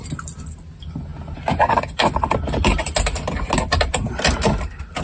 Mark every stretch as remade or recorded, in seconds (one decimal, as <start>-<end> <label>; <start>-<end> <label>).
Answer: 0.0-5.0 recorded